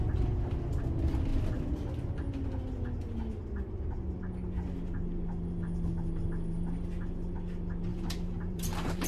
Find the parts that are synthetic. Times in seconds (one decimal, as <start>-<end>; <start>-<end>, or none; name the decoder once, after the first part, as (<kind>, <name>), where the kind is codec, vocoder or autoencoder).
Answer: 7.9-9.1 (vocoder, BigVGAN v2)